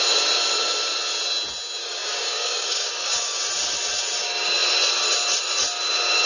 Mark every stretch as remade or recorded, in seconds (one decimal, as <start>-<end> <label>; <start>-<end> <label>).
0.0-1.8 recorded; 1.8-3.4 remade; 3.4-6.3 recorded